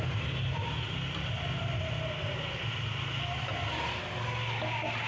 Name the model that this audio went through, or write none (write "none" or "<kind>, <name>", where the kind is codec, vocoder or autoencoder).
none